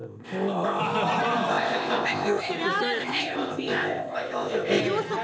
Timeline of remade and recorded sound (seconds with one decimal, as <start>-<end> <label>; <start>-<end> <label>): 0.0-0.8 remade; 0.8-1.5 recorded; 1.5-2.5 remade; 2.5-3.0 recorded; 3.0-4.8 remade; 4.8-5.2 recorded

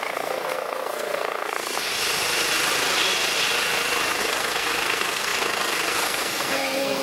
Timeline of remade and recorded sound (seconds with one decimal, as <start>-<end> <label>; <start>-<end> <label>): 0.0-1.9 remade; 1.9-4.2 recorded; 4.2-7.0 remade

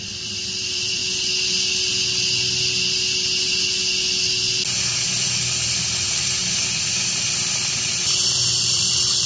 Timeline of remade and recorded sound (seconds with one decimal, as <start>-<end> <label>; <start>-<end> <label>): 0.0-1.0 remade; 1.0-4.8 recorded; 4.8-6.4 remade; 6.4-6.9 recorded; 6.9-9.3 remade